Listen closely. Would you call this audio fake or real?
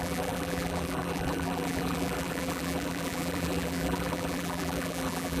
fake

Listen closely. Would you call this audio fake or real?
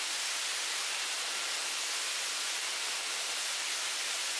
real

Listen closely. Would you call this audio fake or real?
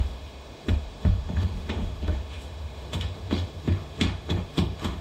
fake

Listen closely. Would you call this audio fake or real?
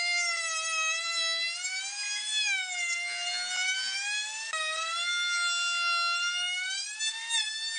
real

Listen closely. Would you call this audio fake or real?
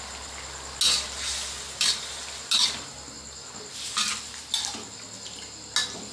real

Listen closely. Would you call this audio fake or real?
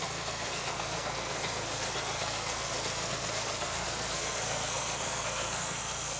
fake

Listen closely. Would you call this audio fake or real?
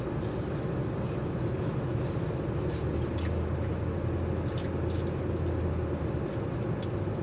real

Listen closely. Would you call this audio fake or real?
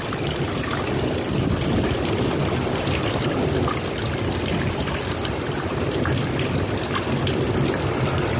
real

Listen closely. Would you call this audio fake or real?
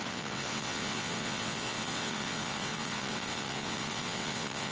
fake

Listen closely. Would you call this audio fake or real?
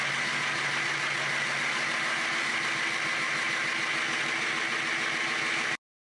real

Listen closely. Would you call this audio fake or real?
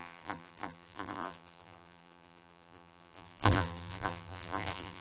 fake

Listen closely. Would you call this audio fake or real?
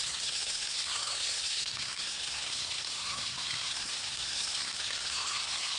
fake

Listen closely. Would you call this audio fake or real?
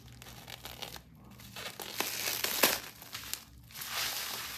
real